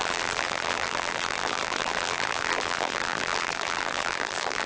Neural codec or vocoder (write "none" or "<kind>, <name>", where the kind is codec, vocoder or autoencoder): vocoder, BigVGAN v2